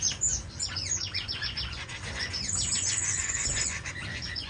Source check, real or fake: fake